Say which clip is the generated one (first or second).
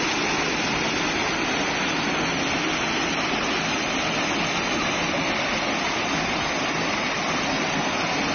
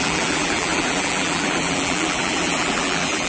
second